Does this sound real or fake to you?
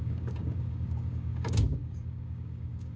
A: fake